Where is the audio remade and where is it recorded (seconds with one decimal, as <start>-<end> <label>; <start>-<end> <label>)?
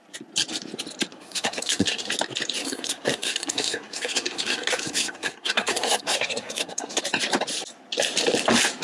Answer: 0.0-1.1 recorded; 1.1-2.1 remade; 2.1-2.6 recorded; 2.6-7.0 remade; 7.0-8.8 recorded